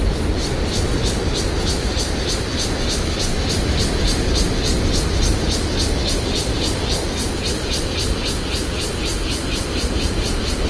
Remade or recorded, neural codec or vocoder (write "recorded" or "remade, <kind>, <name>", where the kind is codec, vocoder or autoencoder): recorded